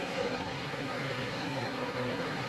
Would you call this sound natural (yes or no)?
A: no